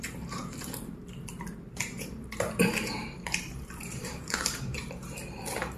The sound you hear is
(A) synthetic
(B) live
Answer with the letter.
A